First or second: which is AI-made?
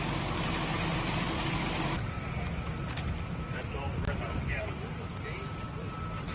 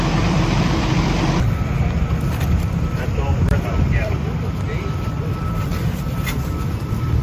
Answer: second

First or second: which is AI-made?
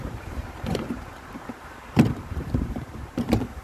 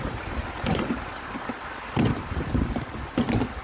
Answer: first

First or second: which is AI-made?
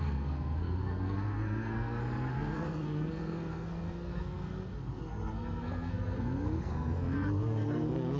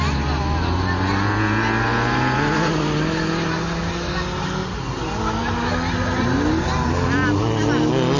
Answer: first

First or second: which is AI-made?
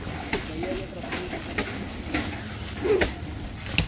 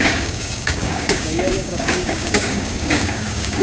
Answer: second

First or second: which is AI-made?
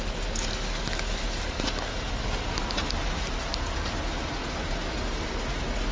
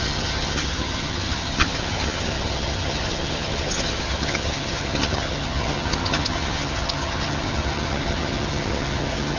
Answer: second